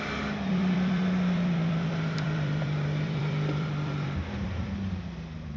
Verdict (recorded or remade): remade